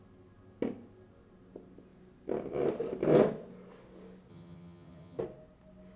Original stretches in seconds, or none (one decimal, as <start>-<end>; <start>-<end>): 0.0-4.3; 5.2-6.0